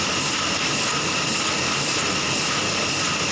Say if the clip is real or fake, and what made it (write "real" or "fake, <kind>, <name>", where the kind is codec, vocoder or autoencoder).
real